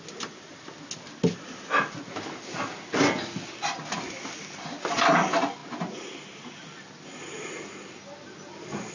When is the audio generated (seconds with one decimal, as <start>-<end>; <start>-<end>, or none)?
none